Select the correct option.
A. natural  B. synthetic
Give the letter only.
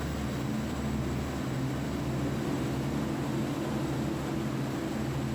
A